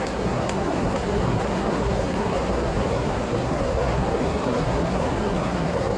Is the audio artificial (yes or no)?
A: yes